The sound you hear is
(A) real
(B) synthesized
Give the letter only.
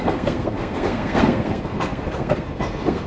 B